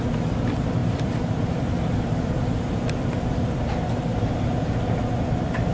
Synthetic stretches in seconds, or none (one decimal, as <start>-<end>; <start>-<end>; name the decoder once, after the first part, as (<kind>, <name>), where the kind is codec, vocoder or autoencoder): 0.8-1.5 (vocoder, BigVGAN v2); 4.1-4.7